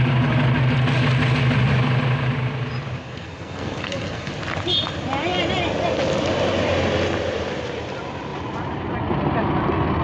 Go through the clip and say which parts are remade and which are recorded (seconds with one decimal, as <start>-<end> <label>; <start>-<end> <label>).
0.0-3.0 recorded; 3.0-4.3 remade; 4.3-10.0 recorded